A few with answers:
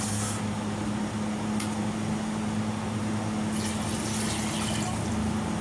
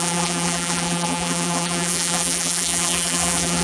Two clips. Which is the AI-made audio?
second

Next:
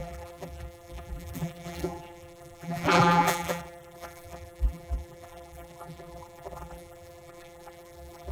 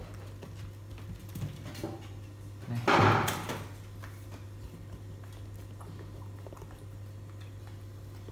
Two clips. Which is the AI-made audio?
first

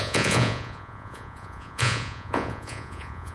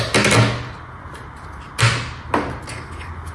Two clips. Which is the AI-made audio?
first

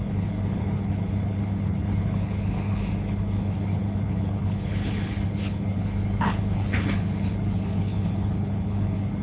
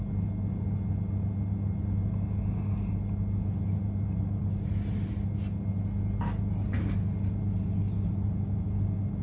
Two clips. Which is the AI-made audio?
first